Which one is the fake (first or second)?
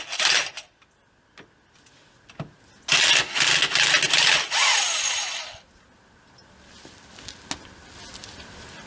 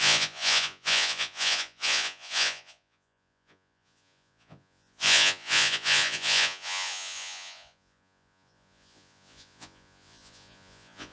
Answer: second